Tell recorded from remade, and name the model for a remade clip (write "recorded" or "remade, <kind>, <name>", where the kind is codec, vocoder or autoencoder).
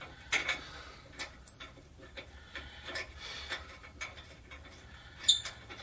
remade, vocoder, BigVGAN v2